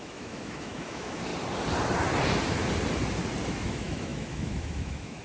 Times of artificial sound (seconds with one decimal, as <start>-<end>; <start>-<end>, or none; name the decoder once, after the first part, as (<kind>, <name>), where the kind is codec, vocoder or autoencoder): 0.0-1.3 (autoencoder, DAC-VAE); 3.5-5.2